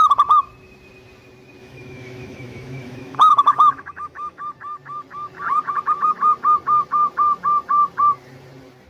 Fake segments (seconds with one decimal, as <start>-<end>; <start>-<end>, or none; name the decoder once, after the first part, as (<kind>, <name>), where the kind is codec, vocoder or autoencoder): 1.6-4.4 (autoencoder, DAC-VAE)